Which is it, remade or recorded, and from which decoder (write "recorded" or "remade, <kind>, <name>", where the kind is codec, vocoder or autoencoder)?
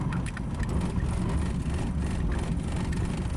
recorded